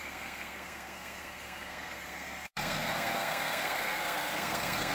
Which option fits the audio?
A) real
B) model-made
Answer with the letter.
B